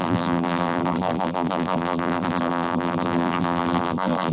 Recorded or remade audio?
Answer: remade